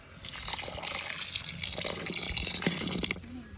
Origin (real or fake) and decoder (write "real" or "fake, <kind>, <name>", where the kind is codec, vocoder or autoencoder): real